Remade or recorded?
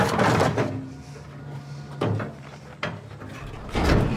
remade